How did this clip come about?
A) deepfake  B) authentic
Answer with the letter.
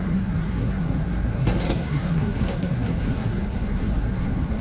A